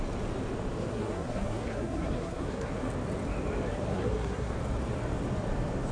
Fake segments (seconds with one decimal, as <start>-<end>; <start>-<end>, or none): 0.9-2.7; 3.9-4.5